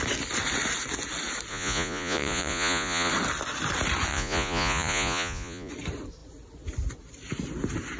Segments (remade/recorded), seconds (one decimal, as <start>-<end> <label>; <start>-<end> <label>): 0.0-1.5 recorded; 1.5-3.1 remade; 3.1-4.1 recorded; 4.1-5.7 remade; 5.7-8.0 recorded